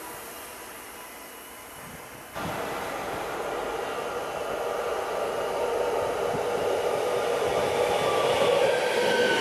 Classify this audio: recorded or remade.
recorded